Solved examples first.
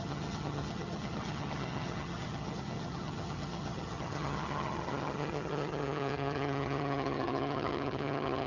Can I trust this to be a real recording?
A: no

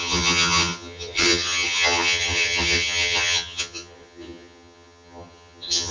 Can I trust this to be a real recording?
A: no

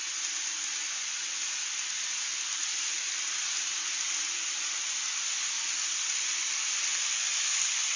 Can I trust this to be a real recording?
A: yes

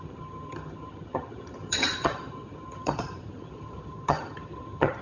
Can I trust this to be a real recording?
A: no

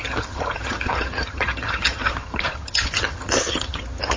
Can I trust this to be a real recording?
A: no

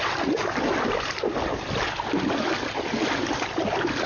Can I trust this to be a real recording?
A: yes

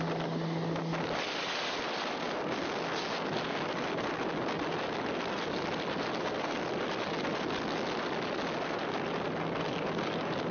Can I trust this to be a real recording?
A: yes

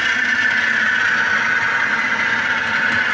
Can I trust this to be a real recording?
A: yes